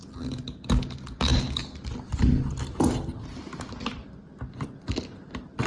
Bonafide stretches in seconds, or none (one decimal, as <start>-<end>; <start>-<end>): 0.0-5.7